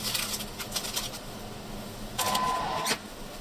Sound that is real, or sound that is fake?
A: real